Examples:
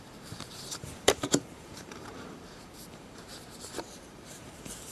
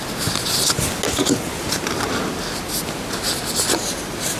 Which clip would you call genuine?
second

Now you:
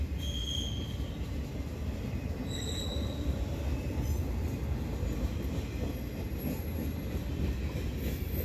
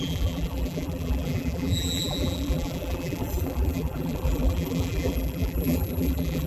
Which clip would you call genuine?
first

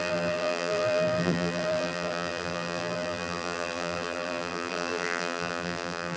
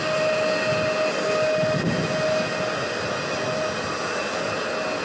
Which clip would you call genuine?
second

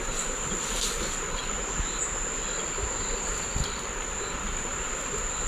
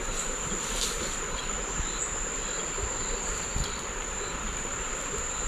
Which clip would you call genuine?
first